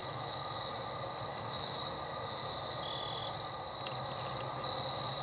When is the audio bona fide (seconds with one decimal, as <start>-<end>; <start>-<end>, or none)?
0.7-1.3; 1.8-5.2